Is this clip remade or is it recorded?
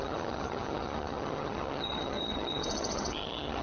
remade